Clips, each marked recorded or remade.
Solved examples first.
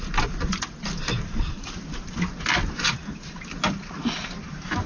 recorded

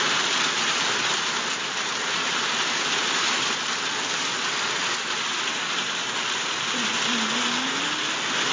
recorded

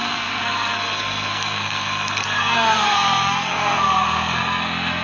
remade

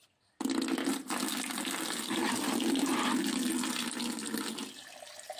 recorded